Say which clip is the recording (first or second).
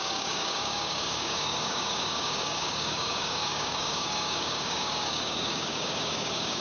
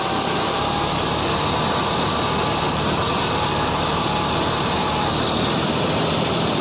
second